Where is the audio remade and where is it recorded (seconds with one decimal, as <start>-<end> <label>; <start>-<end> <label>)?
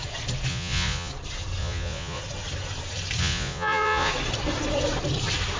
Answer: 0.0-0.5 recorded; 0.5-1.1 remade; 1.1-1.6 recorded; 1.6-2.2 remade; 2.2-3.2 recorded; 3.2-4.1 remade; 4.1-5.6 recorded